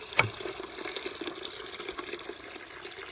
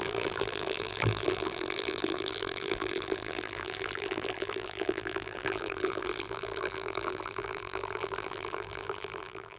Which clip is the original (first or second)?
first